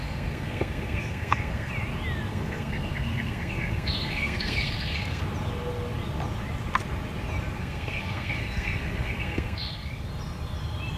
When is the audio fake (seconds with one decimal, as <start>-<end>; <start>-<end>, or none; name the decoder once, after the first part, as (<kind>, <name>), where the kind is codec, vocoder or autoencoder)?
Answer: 0.0-1.7 (codec, SNAC); 2.3-5.2; 7.6-10.1

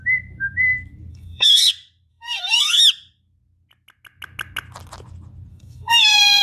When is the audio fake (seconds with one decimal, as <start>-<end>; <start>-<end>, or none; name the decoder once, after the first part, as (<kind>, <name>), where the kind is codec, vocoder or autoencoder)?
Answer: 1.1-1.7 (codec, SNAC); 2.1-2.8; 5.5-6.4

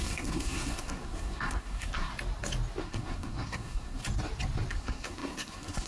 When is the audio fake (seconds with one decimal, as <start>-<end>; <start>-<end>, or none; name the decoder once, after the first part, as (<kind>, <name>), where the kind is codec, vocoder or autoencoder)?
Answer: 0.0-2.1 (codec, SNAC); 2.8-4.0; 4.7-5.9

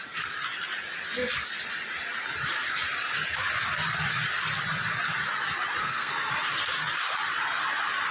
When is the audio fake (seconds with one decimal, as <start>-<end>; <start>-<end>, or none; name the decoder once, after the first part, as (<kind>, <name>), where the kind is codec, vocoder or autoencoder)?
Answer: 5.8-6.3 (codec, SNAC)